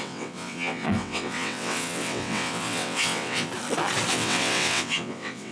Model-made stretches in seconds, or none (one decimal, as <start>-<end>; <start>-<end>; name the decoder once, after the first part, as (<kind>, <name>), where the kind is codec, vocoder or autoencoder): 0.0-3.5 (vocoder, WaveNeXt); 4.1-5.5